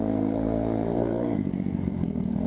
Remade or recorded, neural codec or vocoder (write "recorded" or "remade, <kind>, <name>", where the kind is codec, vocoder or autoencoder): remade, codec, SNAC